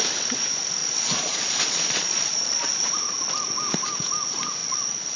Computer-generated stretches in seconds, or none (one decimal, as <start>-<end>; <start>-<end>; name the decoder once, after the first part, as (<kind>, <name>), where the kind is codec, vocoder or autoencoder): 0.8-2.9 (vocoder, Vocos); 4.6-5.2